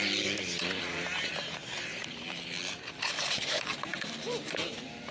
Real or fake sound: fake